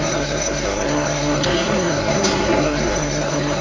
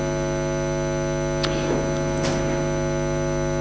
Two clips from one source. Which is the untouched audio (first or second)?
second